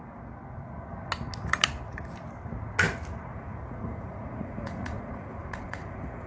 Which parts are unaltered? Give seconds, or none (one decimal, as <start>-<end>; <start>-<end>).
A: 0.0-3.3